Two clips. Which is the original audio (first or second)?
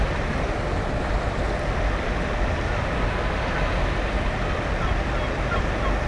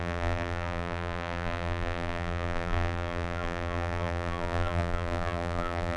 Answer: first